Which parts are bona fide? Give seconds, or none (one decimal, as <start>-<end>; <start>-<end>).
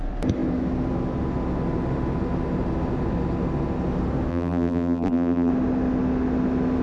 0.0-4.3; 5.5-6.8